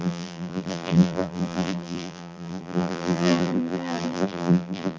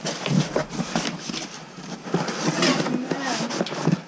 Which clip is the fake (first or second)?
first